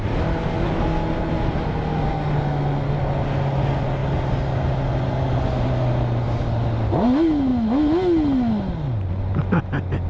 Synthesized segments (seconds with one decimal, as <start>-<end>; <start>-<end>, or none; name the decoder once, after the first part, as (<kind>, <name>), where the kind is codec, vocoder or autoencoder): none